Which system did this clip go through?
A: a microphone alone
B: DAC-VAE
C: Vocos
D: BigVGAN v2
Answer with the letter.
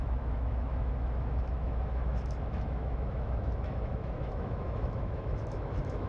B